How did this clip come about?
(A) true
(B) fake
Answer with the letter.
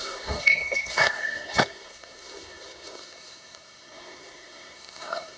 B